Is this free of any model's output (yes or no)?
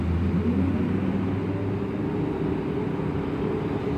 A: yes